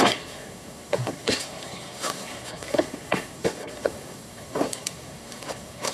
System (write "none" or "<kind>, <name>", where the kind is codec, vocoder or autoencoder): codec, SNAC